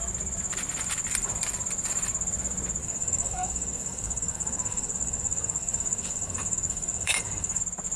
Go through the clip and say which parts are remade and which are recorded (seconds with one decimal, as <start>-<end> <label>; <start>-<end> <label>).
0.0-2.8 recorded; 2.8-7.6 remade; 7.6-8.0 recorded